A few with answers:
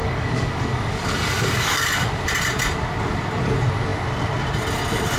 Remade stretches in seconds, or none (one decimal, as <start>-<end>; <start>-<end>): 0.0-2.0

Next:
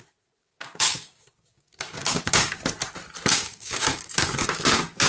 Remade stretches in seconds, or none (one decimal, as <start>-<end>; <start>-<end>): 0.4-2.6; 3.3-5.1

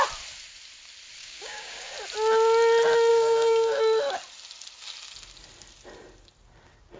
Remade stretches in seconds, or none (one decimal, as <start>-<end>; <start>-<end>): 1.2-1.9; 3.1-3.8

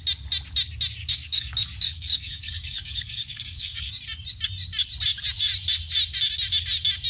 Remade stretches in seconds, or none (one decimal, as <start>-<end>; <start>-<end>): 1.0-3.9

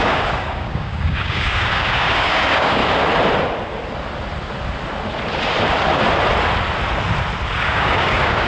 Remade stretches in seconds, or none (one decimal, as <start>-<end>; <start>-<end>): 0.0-2.8; 7.5-8.5

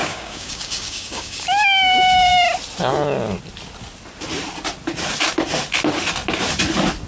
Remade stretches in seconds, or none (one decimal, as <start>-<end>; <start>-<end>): 0.0-1.4